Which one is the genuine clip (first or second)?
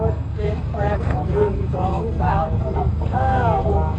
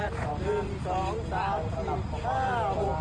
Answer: second